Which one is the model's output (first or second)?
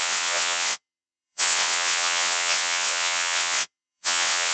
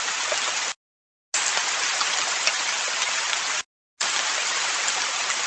first